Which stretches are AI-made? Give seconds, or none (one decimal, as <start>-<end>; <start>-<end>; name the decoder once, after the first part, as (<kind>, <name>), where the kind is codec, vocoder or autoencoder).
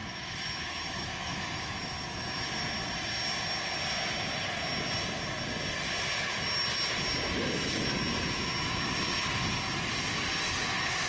0.0-2.5 (autoencoder, DAC-VAE)